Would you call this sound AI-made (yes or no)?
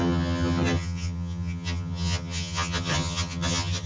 yes